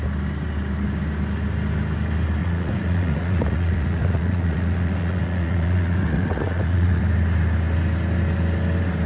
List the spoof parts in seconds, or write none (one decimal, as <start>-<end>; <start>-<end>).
2.4-7.0